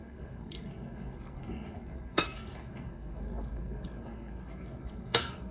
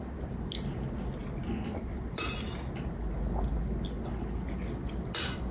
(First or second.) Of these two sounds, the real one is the second